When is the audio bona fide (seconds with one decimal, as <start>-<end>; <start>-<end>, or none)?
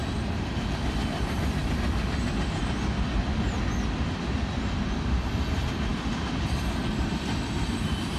0.0-5.9; 6.8-8.2